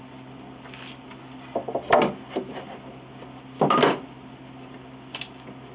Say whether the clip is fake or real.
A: real